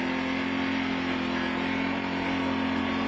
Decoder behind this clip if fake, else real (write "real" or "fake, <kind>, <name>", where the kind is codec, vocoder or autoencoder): real